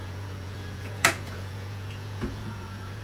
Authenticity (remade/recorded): remade